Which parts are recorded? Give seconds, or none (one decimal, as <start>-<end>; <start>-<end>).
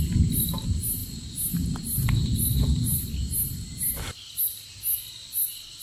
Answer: 0.0-5.8